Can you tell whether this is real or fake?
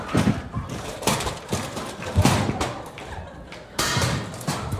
fake